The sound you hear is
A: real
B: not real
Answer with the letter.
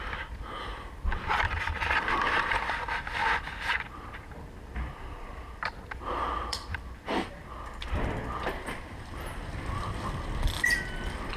B